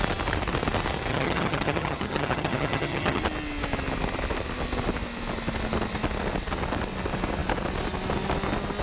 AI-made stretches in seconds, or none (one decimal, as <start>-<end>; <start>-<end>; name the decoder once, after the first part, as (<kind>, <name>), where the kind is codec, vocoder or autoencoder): 1.1-3.2 (vocoder, HiFi-GAN)